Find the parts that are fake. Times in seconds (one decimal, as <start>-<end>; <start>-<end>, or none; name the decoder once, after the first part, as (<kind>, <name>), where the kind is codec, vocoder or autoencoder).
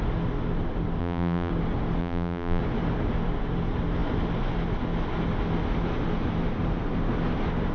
1.0-1.5 (vocoder, BigVGAN v2); 2.0-2.6